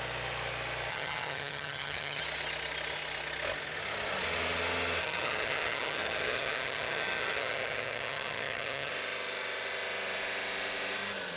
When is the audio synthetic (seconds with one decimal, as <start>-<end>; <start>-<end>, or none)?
0.9-2.2; 5.0-8.9